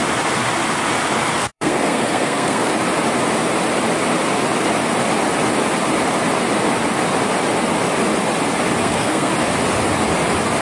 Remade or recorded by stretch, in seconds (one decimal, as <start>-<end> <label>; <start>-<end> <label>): 0.0-1.4 recorded; 1.4-2.7 remade; 2.7-8.8 recorded; 8.8-9.3 remade; 9.3-10.6 recorded